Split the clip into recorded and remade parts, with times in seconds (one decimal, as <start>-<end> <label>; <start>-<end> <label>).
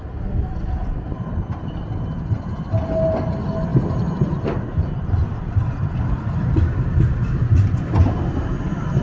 0.0-9.0 recorded